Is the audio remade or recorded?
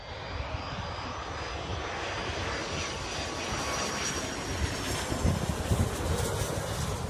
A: recorded